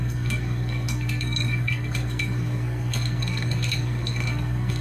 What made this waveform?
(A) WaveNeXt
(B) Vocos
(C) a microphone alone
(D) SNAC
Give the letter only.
D